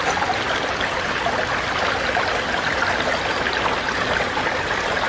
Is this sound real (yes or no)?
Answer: yes